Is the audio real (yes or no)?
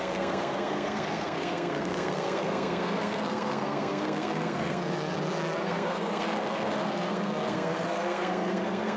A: no